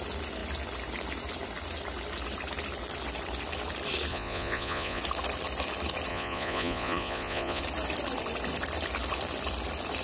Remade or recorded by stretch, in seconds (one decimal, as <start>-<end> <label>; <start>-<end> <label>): 0.0-4.1 recorded; 4.1-5.0 remade; 5.0-6.1 recorded; 6.1-7.6 remade; 7.6-10.0 recorded